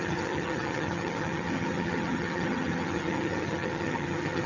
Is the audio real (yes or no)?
no